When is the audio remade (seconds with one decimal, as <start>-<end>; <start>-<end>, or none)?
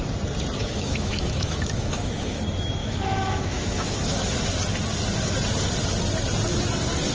0.6-2.4; 2.8-4.2